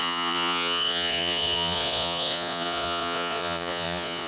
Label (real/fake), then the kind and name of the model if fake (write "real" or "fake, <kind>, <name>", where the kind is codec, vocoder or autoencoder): fake, vocoder, Vocos